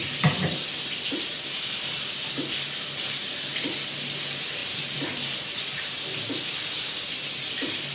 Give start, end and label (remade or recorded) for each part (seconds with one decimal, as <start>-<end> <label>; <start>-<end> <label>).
0.0-7.9 recorded